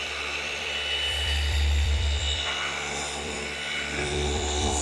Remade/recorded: remade